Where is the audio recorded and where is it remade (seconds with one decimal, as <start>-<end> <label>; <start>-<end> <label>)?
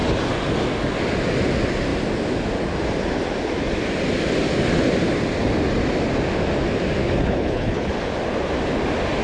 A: 0.0-7.0 recorded; 7.0-7.9 remade; 7.9-9.2 recorded